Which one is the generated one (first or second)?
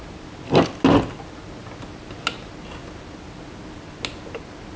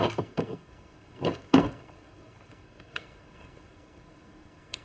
second